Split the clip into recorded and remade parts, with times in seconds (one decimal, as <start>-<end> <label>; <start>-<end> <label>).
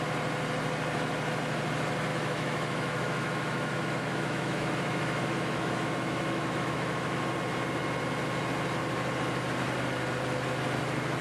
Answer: 0.0-2.1 recorded; 2.1-7.2 remade; 7.2-11.2 recorded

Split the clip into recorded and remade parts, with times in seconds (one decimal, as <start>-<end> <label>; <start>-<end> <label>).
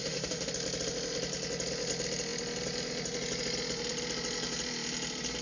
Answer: 0.0-0.5 remade; 0.5-5.4 recorded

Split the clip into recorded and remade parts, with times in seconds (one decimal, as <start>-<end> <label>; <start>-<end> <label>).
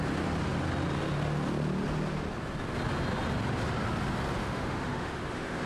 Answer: 0.0-4.4 recorded; 4.4-5.7 remade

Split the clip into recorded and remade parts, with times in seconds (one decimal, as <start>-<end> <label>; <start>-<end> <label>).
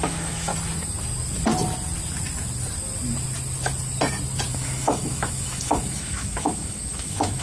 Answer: 0.0-0.5 remade; 0.5-4.5 recorded; 4.5-7.4 remade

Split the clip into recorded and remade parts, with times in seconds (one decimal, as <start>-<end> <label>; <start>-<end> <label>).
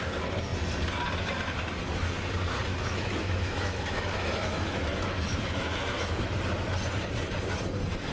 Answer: 0.0-2.7 recorded; 2.7-6.2 remade; 6.2-8.1 recorded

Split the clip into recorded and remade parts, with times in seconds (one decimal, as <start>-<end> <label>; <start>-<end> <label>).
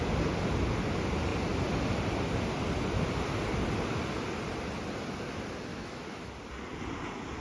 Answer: 0.0-5.7 recorded; 5.7-6.3 remade; 6.3-7.4 recorded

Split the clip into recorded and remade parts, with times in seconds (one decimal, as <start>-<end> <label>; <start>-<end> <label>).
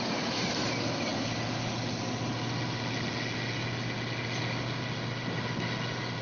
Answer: 0.0-6.2 recorded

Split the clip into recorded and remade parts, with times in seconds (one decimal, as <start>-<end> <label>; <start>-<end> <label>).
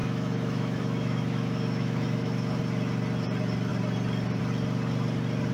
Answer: 0.0-2.6 remade; 2.6-5.5 recorded